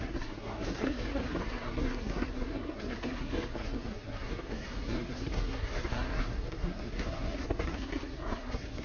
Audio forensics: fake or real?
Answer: fake